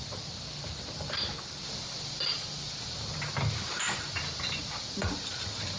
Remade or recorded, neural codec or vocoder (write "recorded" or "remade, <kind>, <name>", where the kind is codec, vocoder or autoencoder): recorded